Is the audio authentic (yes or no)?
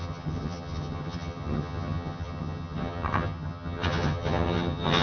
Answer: no